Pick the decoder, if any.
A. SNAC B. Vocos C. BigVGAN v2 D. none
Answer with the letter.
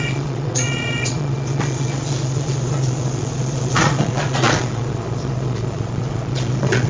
B